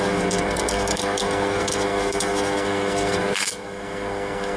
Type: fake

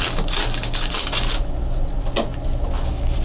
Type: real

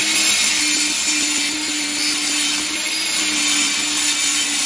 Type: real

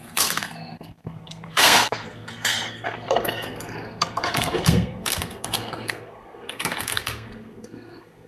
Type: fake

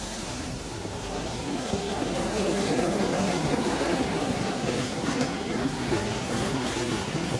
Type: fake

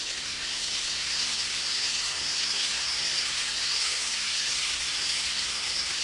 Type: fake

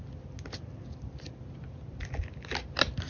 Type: real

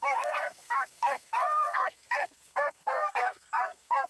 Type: fake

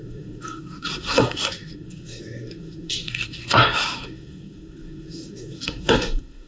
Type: fake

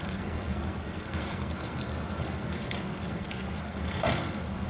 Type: fake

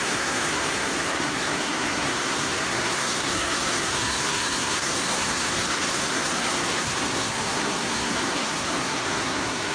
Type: fake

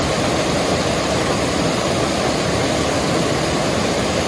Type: real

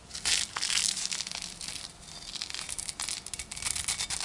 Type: real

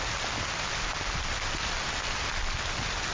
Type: real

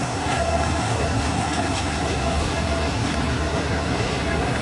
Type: fake